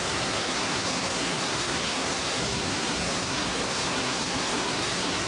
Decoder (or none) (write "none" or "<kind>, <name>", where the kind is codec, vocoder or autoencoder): codec, SNAC